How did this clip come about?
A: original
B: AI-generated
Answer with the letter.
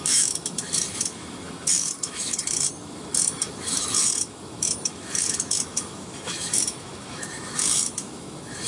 B